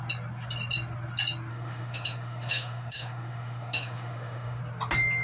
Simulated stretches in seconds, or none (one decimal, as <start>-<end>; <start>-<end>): 1.5-4.6